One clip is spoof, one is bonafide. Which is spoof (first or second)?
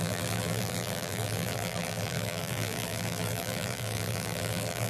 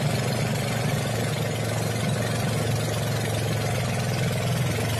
first